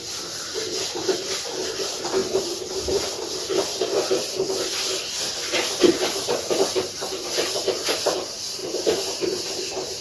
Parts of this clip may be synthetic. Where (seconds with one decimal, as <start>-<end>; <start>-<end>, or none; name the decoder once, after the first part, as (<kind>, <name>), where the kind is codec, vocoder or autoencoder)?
8.6-9.6 (vocoder, BigVGAN v2)